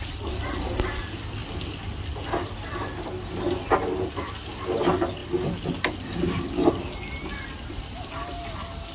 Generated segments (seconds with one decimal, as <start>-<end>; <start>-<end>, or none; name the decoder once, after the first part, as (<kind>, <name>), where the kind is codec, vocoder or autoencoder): none